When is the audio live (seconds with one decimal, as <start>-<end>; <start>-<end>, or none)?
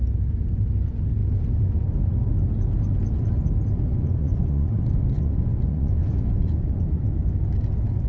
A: 0.0-3.9; 7.0-8.1